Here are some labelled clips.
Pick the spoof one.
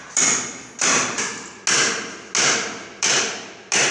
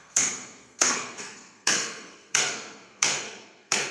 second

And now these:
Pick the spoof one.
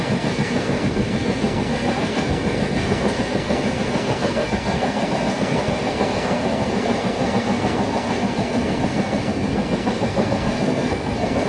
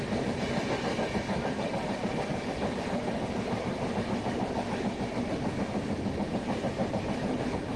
first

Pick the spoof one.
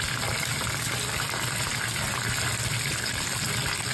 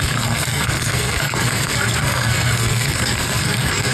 second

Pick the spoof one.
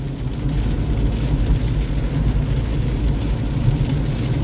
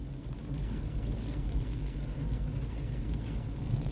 second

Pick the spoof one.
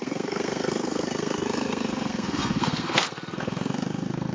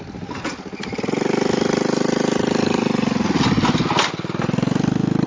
first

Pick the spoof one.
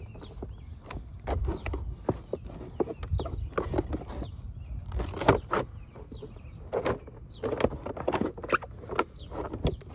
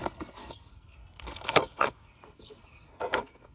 second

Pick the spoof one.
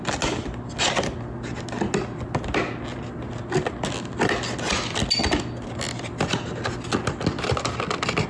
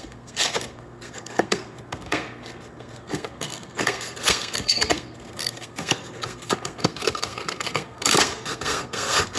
second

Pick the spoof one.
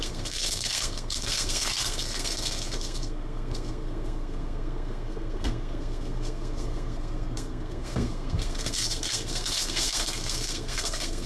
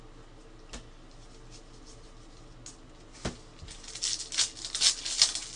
first